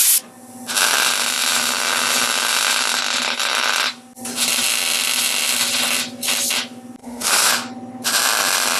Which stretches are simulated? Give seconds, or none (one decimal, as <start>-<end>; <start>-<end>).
7.0-7.5